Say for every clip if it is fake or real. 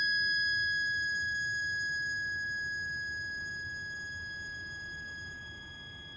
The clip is fake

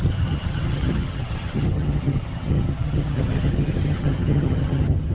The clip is fake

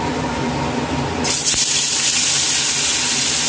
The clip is real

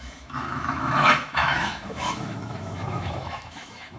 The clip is fake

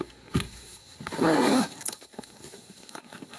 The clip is fake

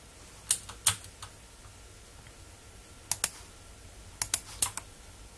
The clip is real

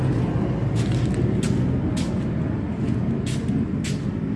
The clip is real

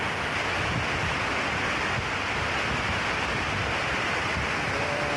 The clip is real